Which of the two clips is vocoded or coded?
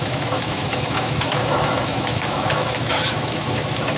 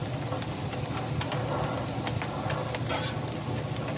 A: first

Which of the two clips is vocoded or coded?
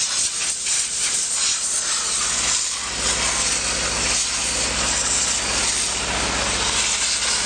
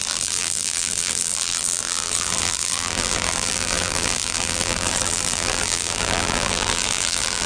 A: second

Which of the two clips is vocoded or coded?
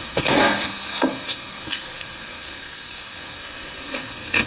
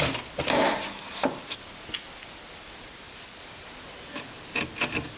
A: first